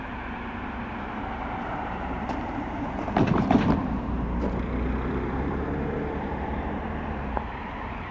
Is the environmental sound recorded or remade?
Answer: remade